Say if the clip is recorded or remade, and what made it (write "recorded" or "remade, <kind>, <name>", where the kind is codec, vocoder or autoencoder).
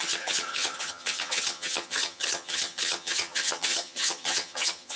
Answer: remade, vocoder, HiFi-GAN